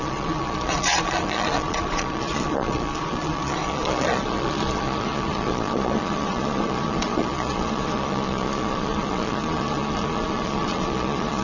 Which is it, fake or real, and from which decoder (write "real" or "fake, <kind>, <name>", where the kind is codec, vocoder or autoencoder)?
fake, vocoder, Vocos